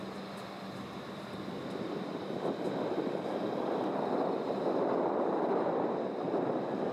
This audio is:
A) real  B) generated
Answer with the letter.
A